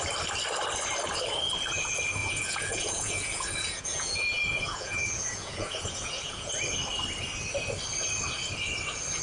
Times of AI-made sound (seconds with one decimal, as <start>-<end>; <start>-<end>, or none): 2.2-6.5